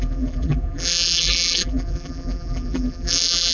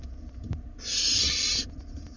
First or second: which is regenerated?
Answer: first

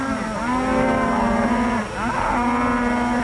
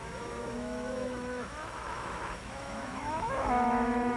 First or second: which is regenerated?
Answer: second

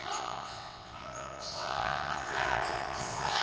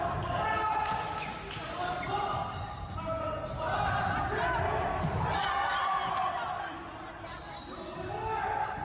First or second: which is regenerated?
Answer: first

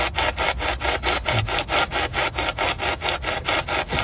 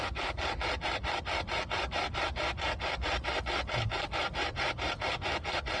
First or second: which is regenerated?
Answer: second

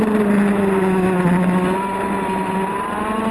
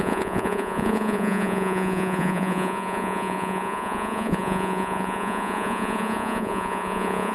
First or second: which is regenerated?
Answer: second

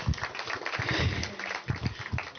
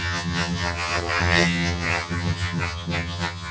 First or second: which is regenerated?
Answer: second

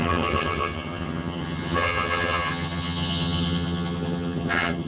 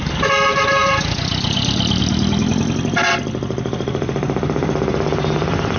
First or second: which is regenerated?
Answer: first